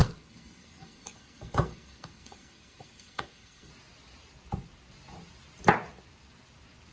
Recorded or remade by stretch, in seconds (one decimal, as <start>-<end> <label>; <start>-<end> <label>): 0.0-3.7 remade; 3.7-6.9 recorded